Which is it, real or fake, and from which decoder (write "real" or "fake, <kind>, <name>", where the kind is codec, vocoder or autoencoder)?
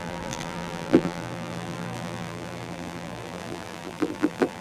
fake, vocoder, BigVGAN v2